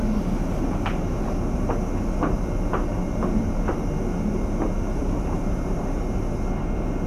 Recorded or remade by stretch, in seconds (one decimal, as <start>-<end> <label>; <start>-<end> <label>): 0.0-2.9 recorded; 2.9-3.8 remade; 3.8-5.0 recorded; 5.0-5.8 remade; 5.8-7.1 recorded